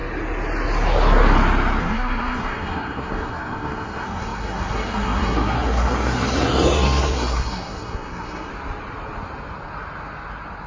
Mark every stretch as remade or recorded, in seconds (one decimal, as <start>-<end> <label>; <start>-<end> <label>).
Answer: 0.0-1.8 recorded; 1.8-8.5 remade; 8.5-10.7 recorded

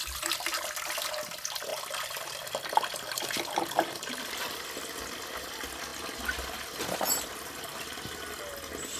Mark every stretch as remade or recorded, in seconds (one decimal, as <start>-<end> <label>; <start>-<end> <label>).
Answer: 0.0-1.7 recorded; 1.7-4.7 remade; 4.7-9.0 recorded

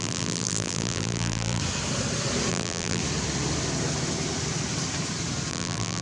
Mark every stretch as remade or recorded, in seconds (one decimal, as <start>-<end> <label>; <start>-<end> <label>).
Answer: 0.0-1.6 remade; 1.6-2.5 recorded; 2.5-3.0 remade; 3.0-5.5 recorded; 5.5-6.0 remade

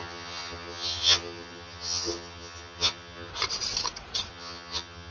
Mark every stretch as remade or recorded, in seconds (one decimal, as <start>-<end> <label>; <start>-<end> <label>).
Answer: 0.0-3.3 remade; 3.3-4.3 recorded; 4.3-5.1 remade

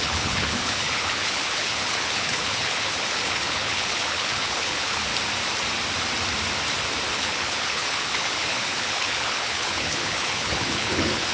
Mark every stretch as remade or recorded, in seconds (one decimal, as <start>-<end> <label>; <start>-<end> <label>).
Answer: 0.0-5.1 remade; 5.1-7.1 recorded; 7.1-11.3 remade

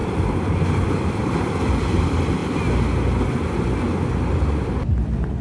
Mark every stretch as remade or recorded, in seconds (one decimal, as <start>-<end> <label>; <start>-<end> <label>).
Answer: 0.0-1.7 remade; 1.7-5.4 recorded

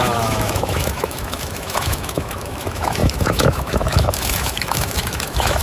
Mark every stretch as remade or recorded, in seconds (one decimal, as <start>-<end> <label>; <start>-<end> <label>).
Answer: 0.0-5.6 remade

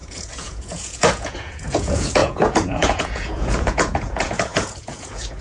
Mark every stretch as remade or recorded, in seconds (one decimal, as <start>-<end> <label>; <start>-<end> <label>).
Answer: 0.0-5.4 remade